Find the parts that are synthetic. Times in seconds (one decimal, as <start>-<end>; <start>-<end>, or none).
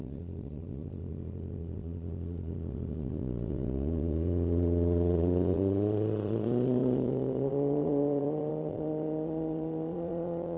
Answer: 0.0-10.6